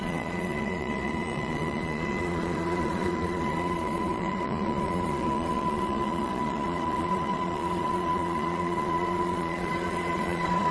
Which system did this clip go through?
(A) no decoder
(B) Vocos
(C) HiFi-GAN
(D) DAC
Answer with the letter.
B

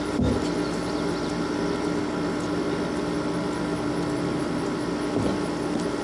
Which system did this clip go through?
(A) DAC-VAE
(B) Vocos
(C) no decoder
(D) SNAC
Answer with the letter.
C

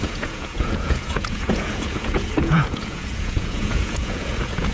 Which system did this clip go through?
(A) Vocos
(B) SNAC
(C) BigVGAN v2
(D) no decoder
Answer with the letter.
A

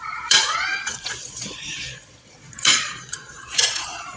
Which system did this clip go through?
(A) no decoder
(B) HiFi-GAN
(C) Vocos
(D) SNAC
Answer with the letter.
C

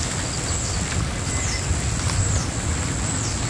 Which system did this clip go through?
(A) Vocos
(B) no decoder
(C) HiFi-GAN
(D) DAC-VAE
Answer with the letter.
B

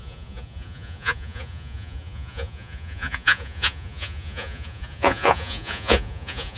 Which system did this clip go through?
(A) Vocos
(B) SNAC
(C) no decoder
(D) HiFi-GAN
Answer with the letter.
A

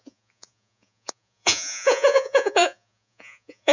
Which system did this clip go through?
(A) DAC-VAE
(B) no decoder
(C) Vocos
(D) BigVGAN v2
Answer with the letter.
C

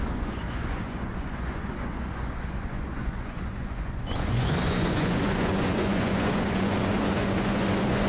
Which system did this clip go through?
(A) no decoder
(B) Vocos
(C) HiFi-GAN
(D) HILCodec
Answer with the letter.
B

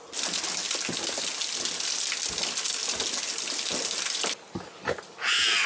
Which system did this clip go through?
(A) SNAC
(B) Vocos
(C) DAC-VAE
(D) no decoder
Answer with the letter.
D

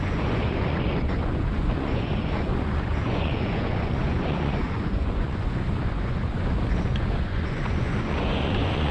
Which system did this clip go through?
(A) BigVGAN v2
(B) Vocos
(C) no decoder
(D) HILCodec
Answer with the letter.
B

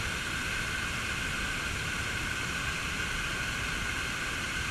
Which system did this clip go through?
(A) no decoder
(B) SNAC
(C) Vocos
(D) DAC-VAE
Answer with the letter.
A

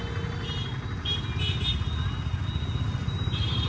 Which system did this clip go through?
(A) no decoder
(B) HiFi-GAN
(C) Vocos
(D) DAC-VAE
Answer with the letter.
A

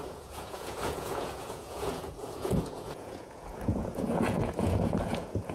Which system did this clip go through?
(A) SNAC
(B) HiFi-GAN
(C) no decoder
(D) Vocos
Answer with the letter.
D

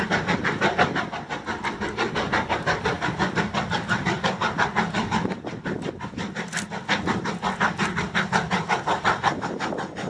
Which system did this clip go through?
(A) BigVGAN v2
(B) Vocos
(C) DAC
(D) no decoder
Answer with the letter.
D